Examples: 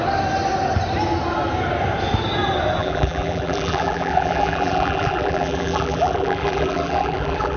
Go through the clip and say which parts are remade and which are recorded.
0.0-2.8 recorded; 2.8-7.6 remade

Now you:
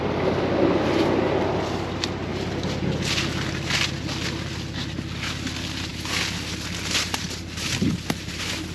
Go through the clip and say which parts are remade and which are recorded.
0.0-8.7 recorded

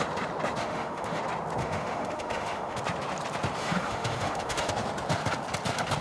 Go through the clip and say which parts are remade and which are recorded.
0.0-0.6 recorded; 0.6-1.2 remade; 1.2-1.6 recorded; 1.6-2.8 remade; 2.8-3.6 recorded; 3.6-4.7 remade; 4.7-6.0 recorded

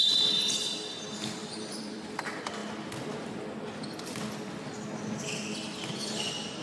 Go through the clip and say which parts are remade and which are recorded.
0.0-1.4 recorded; 1.4-2.1 remade; 2.1-6.6 recorded

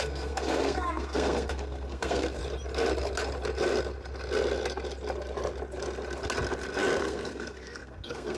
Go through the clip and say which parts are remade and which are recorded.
0.0-2.4 remade; 2.4-7.0 recorded; 7.0-8.4 remade

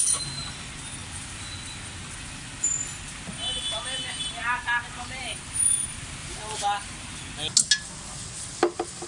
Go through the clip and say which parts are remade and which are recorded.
0.0-6.2 recorded; 6.2-7.2 remade; 7.2-9.1 recorded

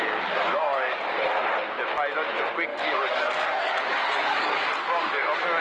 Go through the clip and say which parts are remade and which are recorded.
0.0-0.5 recorded; 0.5-1.2 remade; 1.2-2.7 recorded; 2.7-5.6 remade

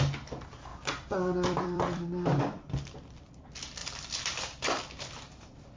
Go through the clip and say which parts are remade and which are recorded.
0.0-0.7 recorded; 0.7-3.4 remade; 3.4-3.8 recorded; 3.8-4.8 remade; 4.8-5.8 recorded